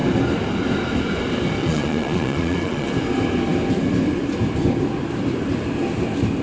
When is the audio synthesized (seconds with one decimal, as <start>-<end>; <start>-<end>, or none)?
1.6-2.9